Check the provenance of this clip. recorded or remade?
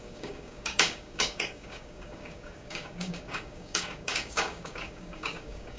remade